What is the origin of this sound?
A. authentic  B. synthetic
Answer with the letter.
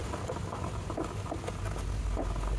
A